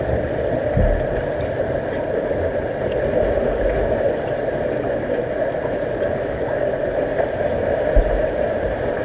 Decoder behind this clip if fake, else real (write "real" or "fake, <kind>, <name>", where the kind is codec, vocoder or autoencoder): real